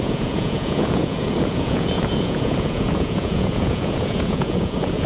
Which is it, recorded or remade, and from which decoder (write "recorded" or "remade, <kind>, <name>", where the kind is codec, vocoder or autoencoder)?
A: remade, vocoder, Vocos